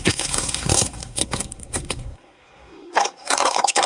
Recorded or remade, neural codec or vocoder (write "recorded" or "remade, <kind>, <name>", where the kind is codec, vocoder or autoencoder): remade, codec, SNAC